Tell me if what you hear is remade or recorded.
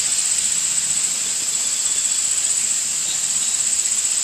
recorded